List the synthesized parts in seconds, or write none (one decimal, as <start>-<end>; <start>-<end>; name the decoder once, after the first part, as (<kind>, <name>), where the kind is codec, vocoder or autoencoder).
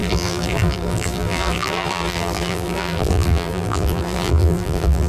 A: 0.0-5.1 (vocoder, BigVGAN v2)